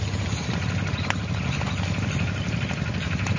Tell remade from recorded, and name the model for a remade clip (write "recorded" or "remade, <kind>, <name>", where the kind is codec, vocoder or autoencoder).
recorded